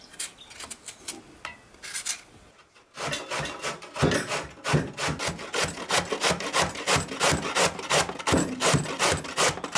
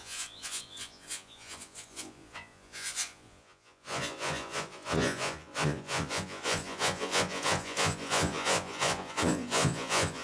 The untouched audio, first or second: first